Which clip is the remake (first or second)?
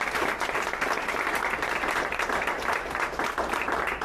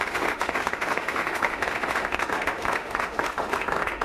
second